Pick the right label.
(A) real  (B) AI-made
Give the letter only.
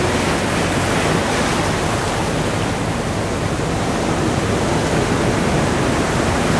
A